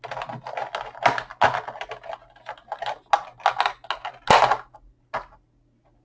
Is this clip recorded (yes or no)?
yes